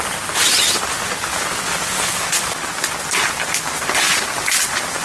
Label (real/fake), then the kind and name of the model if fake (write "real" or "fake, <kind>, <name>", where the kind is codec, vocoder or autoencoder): real